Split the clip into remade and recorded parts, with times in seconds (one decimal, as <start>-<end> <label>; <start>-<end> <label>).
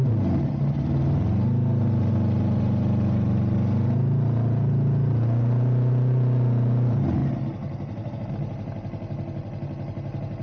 0.0-10.4 recorded